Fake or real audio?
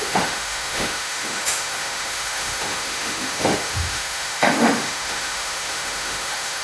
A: fake